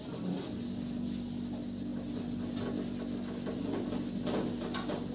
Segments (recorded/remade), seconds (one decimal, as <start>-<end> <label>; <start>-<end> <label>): 0.0-5.1 recorded